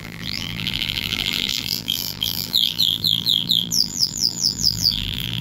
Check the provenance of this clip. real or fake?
fake